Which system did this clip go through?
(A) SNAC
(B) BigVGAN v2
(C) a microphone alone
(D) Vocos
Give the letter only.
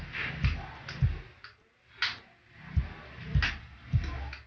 C